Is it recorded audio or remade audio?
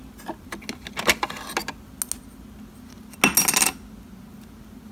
recorded